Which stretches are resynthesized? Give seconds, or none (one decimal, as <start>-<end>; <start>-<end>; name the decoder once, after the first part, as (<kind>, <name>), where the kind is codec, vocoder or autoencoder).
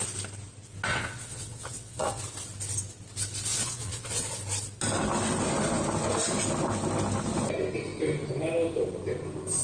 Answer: 0.9-2.2 (vocoder, Vocos); 3.5-4.3